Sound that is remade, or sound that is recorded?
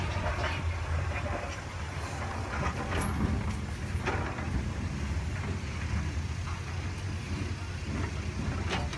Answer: recorded